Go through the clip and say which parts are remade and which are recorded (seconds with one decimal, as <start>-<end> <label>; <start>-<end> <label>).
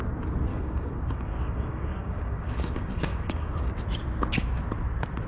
0.0-0.5 recorded; 0.5-3.7 remade; 3.7-5.3 recorded